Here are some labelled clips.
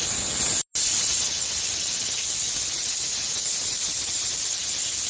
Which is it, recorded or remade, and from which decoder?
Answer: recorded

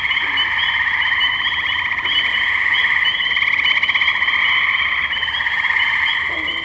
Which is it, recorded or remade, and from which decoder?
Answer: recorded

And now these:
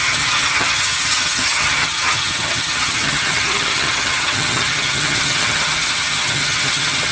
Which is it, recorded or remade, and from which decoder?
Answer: remade, vocoder, HiFi-GAN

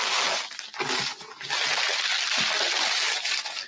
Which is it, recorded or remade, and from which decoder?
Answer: recorded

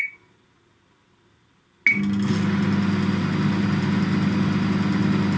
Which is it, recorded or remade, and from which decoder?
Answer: recorded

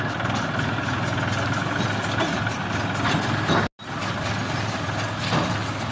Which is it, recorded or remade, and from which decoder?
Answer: recorded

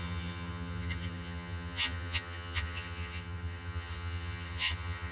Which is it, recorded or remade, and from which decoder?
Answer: remade, vocoder, HiFi-GAN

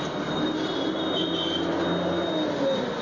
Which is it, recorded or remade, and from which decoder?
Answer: recorded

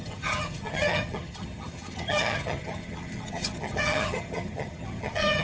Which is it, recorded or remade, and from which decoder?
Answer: remade, vocoder, HiFi-GAN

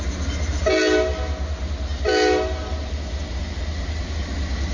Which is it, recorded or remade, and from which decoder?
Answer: recorded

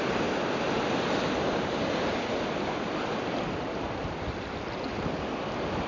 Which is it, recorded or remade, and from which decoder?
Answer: recorded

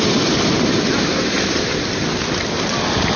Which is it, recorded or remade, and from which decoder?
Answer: recorded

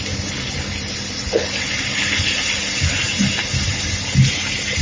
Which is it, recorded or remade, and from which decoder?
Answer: recorded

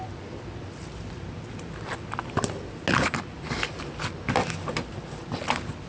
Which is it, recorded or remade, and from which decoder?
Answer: recorded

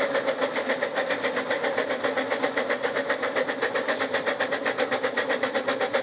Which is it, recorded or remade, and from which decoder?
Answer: recorded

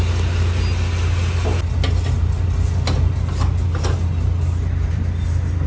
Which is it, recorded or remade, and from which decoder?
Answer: recorded